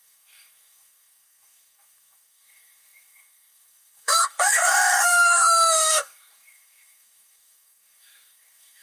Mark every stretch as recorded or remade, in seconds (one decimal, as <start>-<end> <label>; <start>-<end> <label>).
0.0-8.8 remade